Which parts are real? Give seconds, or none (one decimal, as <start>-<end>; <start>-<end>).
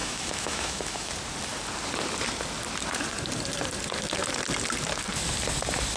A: 1.1-6.0